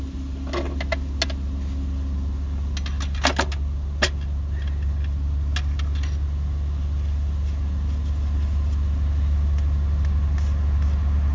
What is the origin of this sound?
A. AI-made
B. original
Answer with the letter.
B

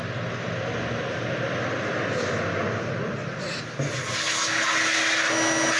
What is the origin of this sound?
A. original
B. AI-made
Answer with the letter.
A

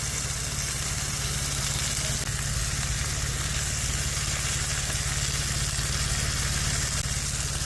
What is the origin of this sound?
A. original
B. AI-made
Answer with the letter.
A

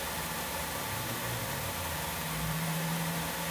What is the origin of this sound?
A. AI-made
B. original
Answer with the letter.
A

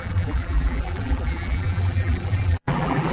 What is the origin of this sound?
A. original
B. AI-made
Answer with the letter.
B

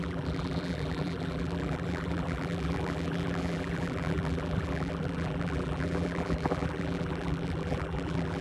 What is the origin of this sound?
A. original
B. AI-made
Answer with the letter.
B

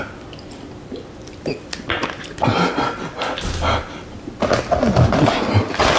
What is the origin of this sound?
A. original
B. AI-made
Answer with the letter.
A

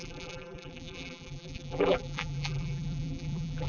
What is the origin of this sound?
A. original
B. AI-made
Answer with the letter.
B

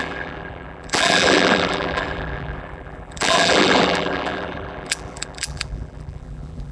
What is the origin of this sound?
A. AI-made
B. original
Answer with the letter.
A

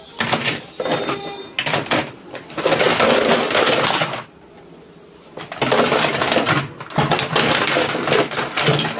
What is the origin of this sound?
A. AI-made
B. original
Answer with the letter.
B